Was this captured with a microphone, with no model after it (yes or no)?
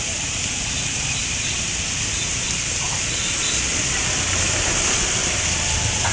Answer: no